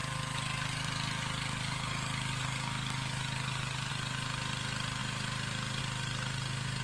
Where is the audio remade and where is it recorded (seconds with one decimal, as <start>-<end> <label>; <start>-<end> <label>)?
0.0-3.9 remade; 3.9-6.8 recorded